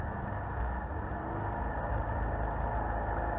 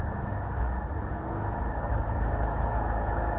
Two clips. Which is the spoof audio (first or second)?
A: second